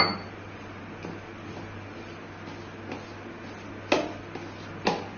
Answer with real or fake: real